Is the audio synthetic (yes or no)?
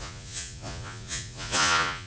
yes